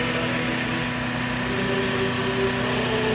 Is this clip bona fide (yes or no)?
yes